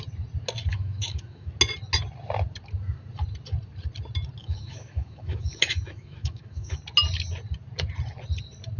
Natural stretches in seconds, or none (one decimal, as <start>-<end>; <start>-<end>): 0.0-0.7; 1.5-4.4; 6.8-8.8